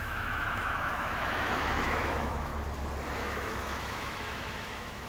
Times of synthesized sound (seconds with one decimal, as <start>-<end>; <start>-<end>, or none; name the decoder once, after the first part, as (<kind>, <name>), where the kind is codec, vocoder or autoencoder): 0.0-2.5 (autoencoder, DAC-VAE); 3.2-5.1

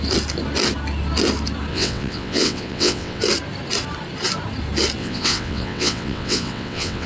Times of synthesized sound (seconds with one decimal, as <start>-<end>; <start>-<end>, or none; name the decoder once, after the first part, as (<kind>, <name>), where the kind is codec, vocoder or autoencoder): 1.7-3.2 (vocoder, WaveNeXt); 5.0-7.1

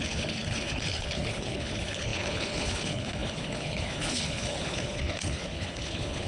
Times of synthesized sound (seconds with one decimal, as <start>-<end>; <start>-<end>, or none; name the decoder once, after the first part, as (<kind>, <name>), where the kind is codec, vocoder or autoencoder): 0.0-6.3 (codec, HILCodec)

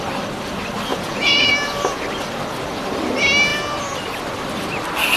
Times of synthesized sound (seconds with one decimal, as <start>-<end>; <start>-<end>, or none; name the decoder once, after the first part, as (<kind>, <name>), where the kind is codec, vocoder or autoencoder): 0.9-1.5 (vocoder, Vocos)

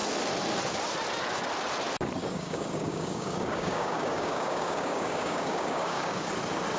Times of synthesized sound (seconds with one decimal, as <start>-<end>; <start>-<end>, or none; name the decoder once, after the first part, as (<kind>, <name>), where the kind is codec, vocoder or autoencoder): 2.2-6.3 (codec, DAC)

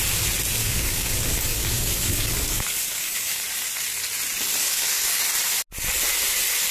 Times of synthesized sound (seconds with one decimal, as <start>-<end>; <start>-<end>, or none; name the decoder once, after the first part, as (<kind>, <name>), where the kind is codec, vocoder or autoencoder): 0.6-3.4 (codec, DAC); 4.6-5.2

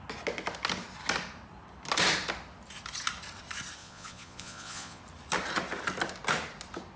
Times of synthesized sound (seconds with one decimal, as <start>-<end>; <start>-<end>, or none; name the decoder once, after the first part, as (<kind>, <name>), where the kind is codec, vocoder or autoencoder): 3.8-5.0 (vocoder, Vocos)